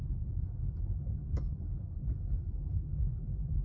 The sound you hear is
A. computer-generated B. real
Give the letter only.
A